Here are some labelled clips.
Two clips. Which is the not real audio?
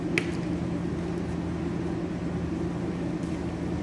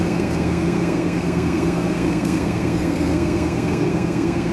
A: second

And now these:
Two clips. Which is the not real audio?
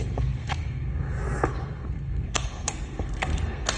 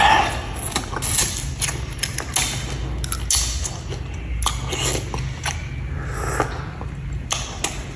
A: first